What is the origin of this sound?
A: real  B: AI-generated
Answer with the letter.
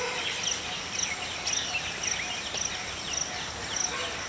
A